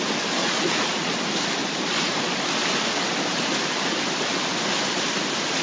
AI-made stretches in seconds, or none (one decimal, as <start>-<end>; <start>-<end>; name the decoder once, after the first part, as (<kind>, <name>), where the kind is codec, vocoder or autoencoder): 0.4-1.1 (vocoder, Vocos)